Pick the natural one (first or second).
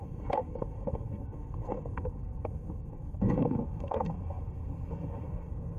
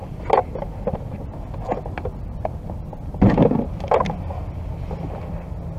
second